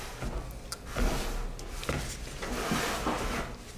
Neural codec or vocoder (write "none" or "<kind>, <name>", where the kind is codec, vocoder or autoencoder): none